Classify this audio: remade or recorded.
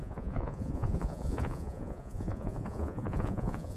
remade